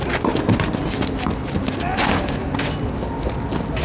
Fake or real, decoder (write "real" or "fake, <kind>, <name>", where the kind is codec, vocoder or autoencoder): real